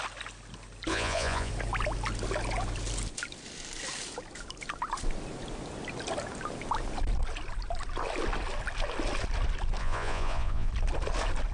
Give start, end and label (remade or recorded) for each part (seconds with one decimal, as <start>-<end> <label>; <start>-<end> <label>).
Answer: 0.0-0.9 recorded; 0.9-1.5 remade; 1.5-9.8 recorded; 9.8-10.7 remade; 10.7-11.5 recorded